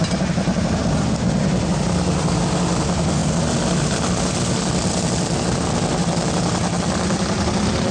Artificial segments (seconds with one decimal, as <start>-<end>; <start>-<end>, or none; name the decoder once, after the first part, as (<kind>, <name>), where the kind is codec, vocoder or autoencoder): none